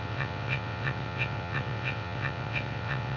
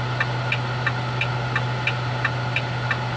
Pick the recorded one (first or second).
second